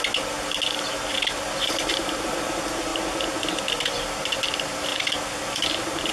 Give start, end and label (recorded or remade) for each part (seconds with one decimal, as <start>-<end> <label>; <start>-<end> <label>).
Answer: 0.0-6.1 recorded